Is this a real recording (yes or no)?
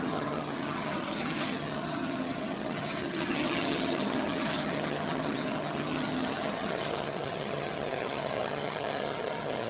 no